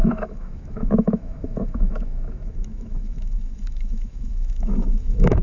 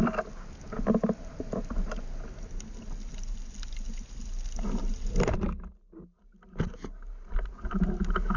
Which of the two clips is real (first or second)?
second